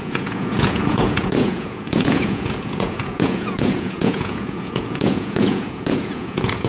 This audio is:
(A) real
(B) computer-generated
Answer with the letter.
B